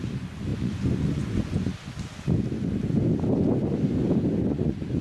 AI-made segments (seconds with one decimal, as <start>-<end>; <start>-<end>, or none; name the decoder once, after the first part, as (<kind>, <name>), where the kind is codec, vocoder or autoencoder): 0.0-1.7 (vocoder, Vocos); 4.5-5.0